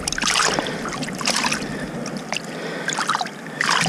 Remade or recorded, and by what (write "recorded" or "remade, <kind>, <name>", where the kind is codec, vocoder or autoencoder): recorded